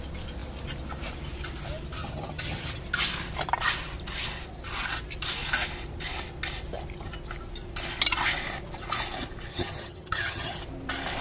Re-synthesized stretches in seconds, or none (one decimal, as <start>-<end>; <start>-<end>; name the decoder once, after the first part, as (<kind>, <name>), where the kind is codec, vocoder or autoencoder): 2.0-2.8 (vocoder, HiFi-GAN); 9.5-10.6